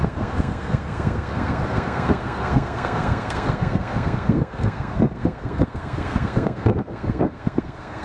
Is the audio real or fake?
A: fake